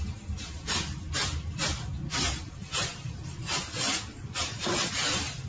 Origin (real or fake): real